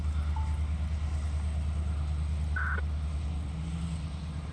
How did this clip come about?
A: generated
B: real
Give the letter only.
B